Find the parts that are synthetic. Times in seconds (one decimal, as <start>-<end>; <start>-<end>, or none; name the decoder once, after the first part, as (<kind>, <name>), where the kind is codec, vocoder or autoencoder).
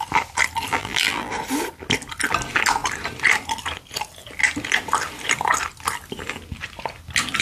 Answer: 0.7-1.3 (vocoder, BigVGAN v2)